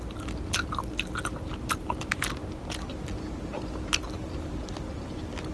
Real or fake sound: real